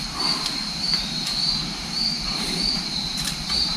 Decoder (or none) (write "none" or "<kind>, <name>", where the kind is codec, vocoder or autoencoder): vocoder, BigVGAN v2